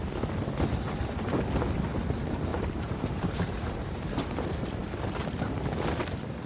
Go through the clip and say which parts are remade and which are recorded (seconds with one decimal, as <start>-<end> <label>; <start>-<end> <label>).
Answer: 0.0-2.5 recorded; 2.5-4.1 remade; 4.1-6.5 recorded